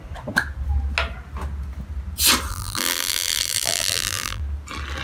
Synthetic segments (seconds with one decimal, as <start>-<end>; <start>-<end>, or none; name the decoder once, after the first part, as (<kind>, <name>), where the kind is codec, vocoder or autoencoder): 2.5-4.4 (vocoder, BigVGAN v2)